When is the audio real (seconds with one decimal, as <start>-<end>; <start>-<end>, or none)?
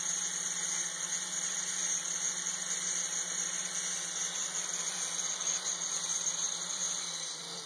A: 0.0-7.7